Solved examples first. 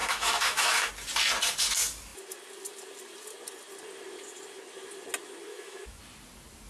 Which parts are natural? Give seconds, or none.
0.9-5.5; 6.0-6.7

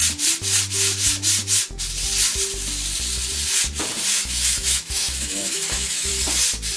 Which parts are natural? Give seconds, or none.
0.0-4.1; 6.1-6.8

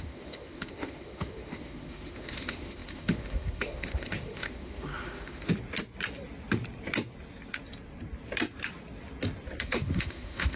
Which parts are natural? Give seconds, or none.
5.5-9.6

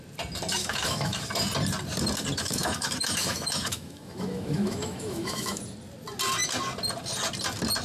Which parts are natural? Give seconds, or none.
0.0-0.6; 1.3-2.4; 5.6-7.8

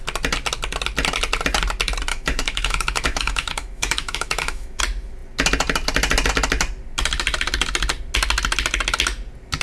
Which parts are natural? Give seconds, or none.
0.0-2.1; 4.8-9.6

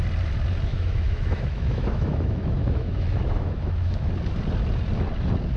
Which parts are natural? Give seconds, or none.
0.0-0.7; 4.1-5.6

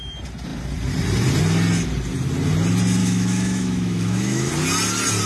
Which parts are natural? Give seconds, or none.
0.0-3.0; 4.5-5.3

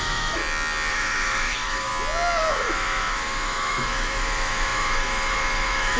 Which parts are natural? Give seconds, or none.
0.4-0.9; 1.9-2.5